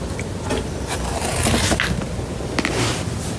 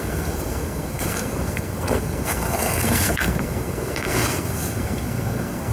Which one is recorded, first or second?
first